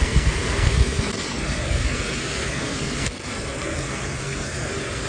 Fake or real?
fake